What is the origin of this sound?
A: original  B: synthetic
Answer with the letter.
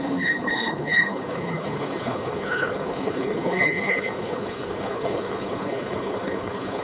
B